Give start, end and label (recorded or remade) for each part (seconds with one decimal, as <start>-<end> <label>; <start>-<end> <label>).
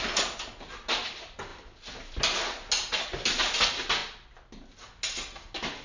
0.0-5.8 recorded